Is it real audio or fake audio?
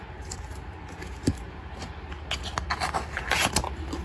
real